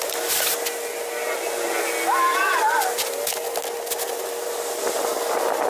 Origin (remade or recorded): recorded